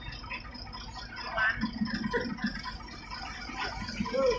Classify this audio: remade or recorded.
recorded